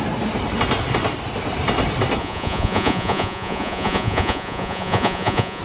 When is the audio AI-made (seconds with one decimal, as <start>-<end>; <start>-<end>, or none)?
2.2-5.6